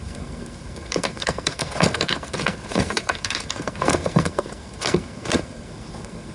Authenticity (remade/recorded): remade